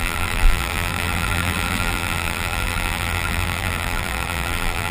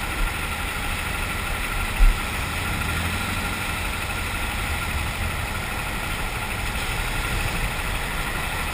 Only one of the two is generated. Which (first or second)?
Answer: first